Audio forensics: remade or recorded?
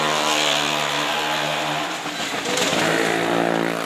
recorded